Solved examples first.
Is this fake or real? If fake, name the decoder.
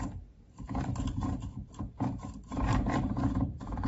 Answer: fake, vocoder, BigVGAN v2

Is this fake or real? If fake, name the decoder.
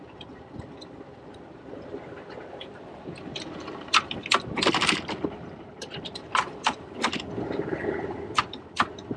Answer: fake, vocoder, BigVGAN v2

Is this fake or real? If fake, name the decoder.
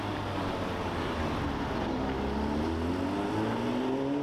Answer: real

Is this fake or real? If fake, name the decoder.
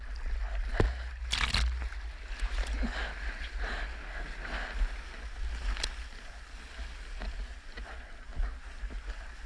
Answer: real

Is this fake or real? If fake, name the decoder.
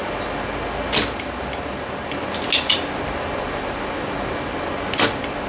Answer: real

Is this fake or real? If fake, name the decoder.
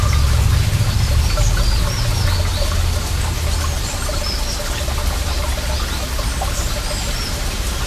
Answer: real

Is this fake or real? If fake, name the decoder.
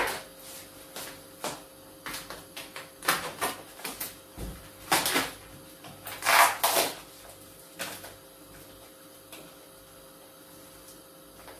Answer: real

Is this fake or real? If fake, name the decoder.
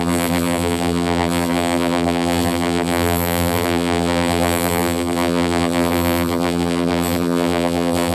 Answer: fake, vocoder, BigVGAN v2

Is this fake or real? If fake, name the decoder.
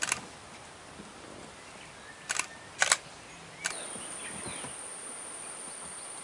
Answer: fake, vocoder, BigVGAN v2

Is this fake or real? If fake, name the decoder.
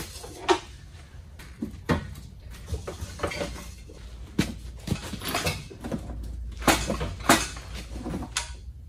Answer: real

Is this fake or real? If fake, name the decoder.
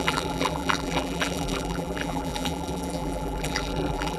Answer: fake, vocoder, BigVGAN v2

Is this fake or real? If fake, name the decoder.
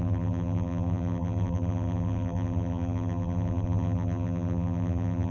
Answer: fake, vocoder, BigVGAN v2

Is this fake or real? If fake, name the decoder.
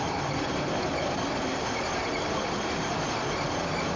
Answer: real